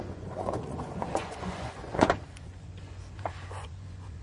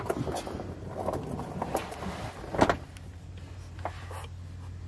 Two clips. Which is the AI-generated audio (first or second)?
first